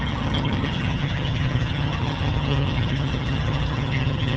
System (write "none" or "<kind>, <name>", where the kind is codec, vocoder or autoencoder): vocoder, HiFi-GAN